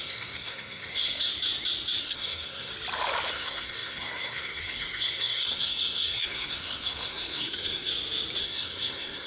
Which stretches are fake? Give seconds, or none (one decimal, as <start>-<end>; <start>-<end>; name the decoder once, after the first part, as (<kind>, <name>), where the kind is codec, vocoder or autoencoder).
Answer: 0.0-1.3 (codec, SNAC); 2.0-2.7; 3.3-7.9; 8.4-9.3